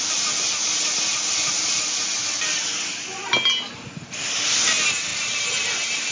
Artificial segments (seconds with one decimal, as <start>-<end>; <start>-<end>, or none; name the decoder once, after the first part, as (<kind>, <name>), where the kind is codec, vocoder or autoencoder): none